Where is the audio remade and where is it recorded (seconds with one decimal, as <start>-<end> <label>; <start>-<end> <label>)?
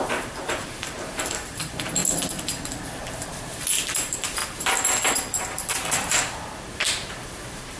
0.0-2.0 remade; 2.0-3.1 recorded; 3.1-4.4 remade; 4.4-5.1 recorded; 5.1-7.8 remade